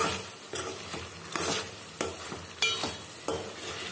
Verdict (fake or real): real